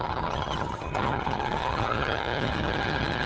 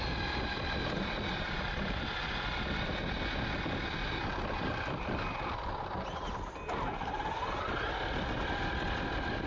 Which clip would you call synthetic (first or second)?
first